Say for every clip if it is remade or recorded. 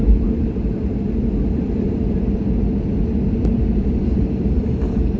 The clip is remade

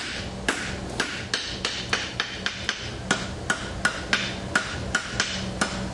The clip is recorded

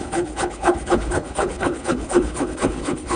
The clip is remade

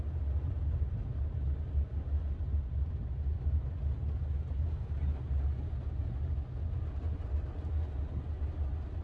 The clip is recorded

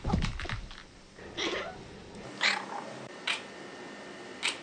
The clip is recorded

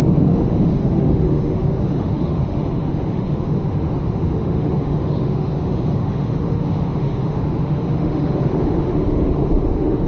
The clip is remade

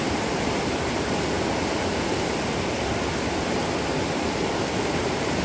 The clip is recorded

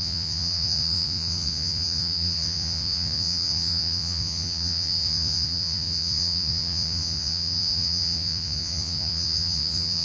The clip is remade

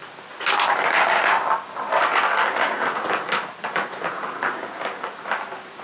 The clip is recorded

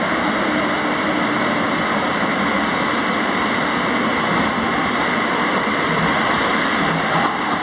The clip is recorded